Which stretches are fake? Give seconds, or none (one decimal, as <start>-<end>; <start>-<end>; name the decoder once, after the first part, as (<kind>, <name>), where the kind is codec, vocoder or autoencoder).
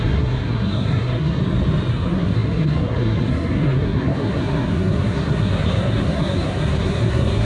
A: 0.0-1.4 (codec, SNAC); 1.9-7.5